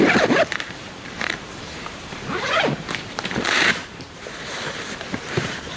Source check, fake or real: fake